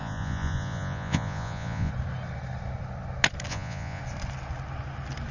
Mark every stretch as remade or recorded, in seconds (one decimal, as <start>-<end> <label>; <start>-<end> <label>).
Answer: 0.0-1.9 remade; 1.9-3.5 recorded; 3.5-4.0 remade; 4.0-5.3 recorded